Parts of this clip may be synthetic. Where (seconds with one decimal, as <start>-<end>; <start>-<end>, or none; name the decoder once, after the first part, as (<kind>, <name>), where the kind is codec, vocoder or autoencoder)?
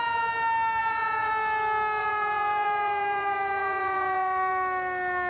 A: 0.8-1.3 (vocoder, Vocos); 2.0-4.5